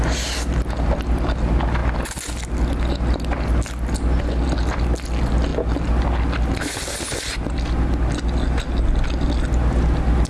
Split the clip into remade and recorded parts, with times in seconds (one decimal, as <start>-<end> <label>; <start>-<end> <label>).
0.0-10.3 recorded

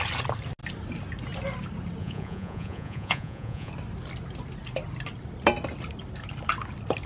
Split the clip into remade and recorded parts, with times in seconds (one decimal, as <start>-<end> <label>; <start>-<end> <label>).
0.0-2.0 recorded; 2.0-3.7 remade; 3.7-7.1 recorded

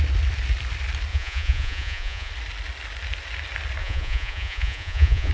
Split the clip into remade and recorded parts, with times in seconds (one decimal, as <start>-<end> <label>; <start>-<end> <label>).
0.0-1.1 recorded; 1.1-2.3 remade; 2.3-3.8 recorded; 3.8-5.3 remade

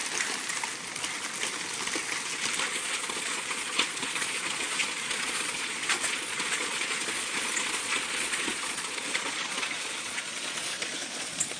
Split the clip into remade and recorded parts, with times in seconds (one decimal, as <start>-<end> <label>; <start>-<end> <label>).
0.0-2.7 recorded; 2.7-11.6 remade